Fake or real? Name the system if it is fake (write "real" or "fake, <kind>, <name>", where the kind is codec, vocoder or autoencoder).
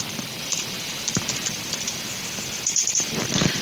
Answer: fake, vocoder, BigVGAN v2